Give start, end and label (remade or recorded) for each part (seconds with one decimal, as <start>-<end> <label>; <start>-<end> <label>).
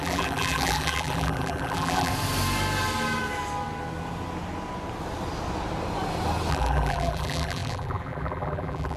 0.0-2.1 remade; 2.1-6.5 recorded; 6.5-9.0 remade